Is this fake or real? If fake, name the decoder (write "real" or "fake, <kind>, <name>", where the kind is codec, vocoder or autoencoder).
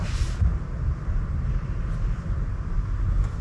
real